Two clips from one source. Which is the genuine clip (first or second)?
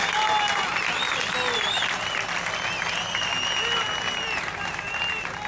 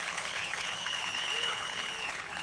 first